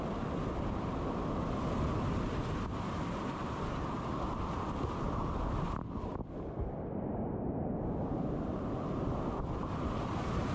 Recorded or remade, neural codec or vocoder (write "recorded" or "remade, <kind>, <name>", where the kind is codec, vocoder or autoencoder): recorded